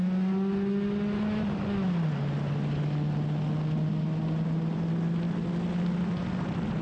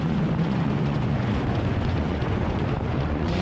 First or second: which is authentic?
first